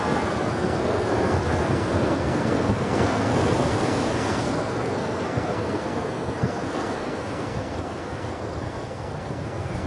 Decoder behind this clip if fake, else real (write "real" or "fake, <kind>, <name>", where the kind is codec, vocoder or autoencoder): fake, codec, SNAC